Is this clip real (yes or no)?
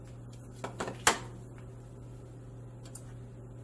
yes